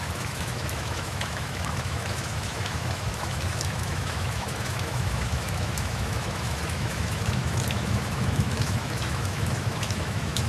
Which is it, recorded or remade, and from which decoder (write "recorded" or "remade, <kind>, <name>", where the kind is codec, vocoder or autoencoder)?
remade, autoencoder, DAC-VAE